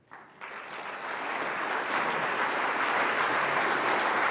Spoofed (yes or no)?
no